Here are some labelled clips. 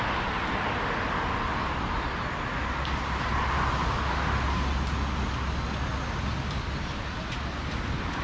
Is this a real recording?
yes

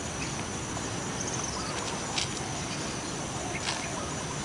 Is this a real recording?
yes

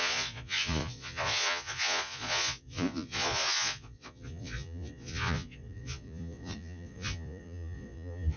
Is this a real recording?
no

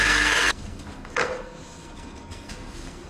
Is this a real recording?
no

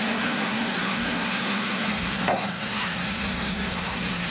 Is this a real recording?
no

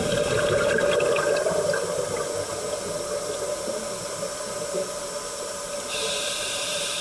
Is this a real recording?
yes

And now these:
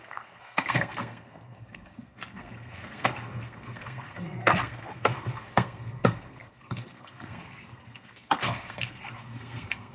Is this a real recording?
no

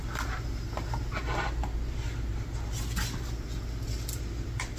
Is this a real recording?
yes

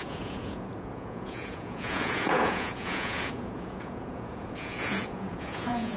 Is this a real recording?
no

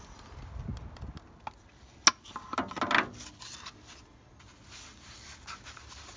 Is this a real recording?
yes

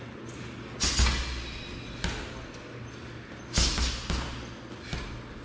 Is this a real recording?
yes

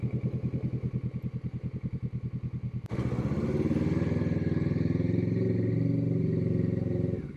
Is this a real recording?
yes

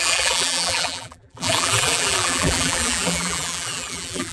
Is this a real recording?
no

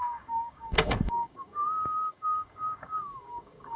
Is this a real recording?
no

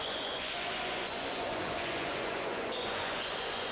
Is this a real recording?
no